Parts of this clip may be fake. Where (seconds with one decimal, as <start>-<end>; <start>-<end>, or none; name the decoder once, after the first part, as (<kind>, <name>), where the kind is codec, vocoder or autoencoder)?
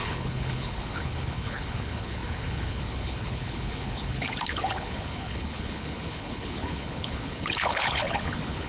0.0-8.7 (codec, HILCodec)